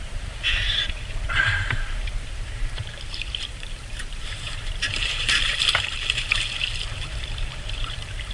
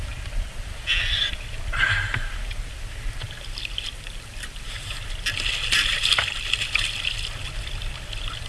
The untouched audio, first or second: second